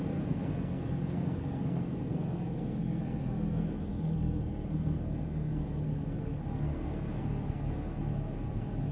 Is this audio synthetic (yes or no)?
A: yes